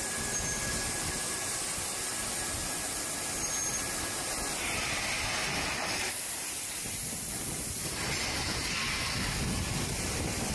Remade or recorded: recorded